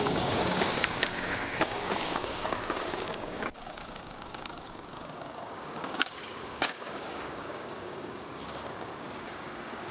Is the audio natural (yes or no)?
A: no